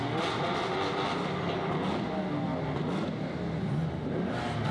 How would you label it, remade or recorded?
recorded